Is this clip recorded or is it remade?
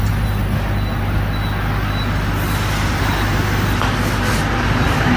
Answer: recorded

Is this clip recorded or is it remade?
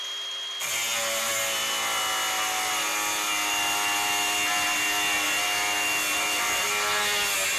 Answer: recorded